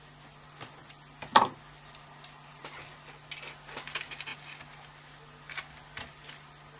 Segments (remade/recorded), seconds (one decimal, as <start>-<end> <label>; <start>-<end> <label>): 0.0-6.8 recorded